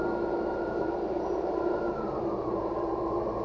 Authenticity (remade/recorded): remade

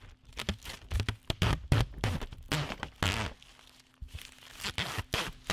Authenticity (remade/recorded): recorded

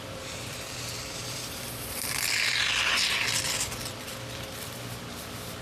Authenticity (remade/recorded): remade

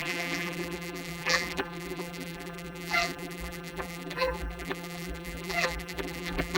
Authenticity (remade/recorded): remade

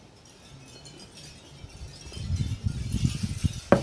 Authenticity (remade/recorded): remade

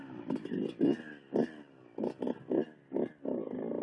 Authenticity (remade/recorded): recorded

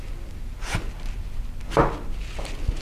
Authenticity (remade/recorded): recorded